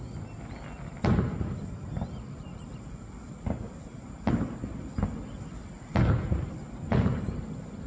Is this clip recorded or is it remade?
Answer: recorded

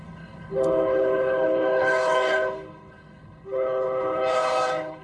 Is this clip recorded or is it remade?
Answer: remade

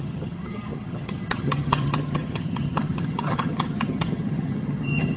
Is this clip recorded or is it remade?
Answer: remade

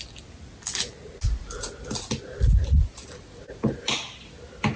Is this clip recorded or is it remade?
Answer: recorded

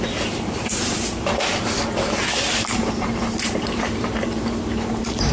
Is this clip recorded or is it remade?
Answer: remade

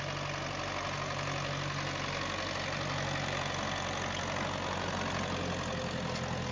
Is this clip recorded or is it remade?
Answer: recorded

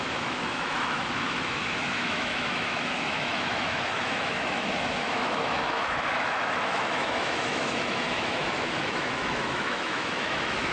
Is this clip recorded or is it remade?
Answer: remade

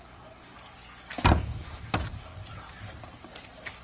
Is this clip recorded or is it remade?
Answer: recorded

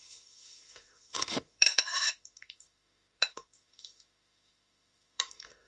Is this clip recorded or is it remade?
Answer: remade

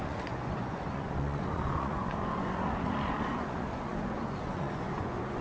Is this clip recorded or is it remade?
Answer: remade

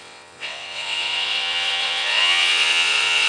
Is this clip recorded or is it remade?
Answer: remade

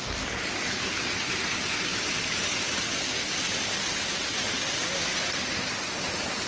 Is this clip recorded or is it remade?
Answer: recorded